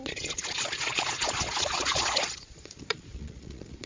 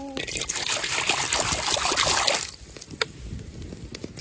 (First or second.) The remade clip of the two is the first